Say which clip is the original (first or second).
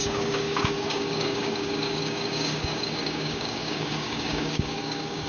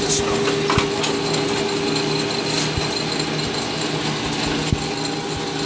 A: second